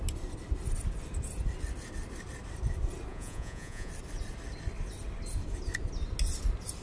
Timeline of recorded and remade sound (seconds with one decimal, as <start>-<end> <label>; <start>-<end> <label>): 0.0-3.1 recorded; 3.1-3.9 remade; 3.9-6.8 recorded

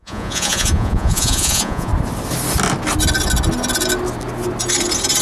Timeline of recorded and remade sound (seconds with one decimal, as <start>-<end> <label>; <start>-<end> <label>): 0.0-1.9 remade; 1.9-5.2 recorded

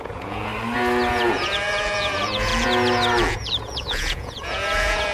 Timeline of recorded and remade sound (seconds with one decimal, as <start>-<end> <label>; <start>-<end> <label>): 0.0-0.5 remade; 0.5-1.1 recorded; 1.1-2.5 remade; 2.5-3.3 recorded; 3.3-5.1 remade